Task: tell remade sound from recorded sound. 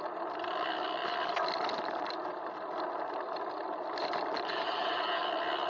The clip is remade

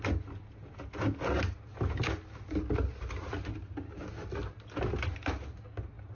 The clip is recorded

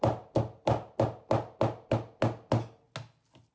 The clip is recorded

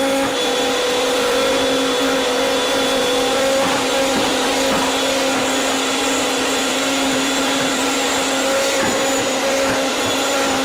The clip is remade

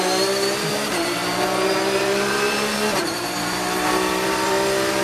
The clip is remade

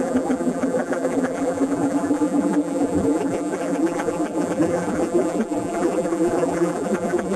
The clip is remade